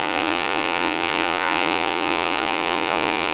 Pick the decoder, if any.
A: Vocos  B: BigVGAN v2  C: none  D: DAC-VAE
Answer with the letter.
A